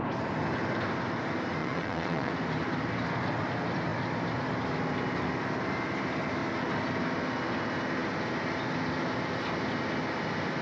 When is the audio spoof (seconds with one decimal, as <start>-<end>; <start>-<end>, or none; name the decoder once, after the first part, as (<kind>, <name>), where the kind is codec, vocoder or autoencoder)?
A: 1.6-2.3 (vocoder, WaveNeXt)